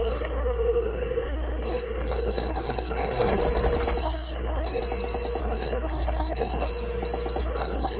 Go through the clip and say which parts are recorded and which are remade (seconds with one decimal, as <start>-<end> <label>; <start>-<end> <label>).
0.0-3.4 remade; 3.4-4.0 recorded; 4.0-4.8 remade; 4.8-5.4 recorded; 5.4-6.7 remade; 6.7-7.4 recorded; 7.4-8.0 remade